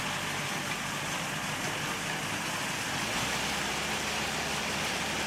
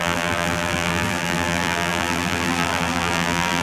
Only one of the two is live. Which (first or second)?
first